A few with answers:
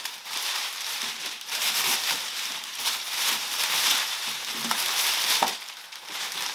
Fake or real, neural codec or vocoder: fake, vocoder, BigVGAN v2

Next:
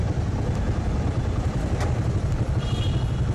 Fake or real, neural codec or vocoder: fake, vocoder, BigVGAN v2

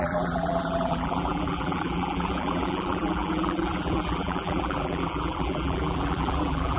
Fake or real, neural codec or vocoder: fake, vocoder, BigVGAN v2